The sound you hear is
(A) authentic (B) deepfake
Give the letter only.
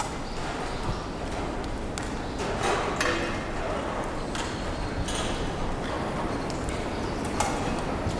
A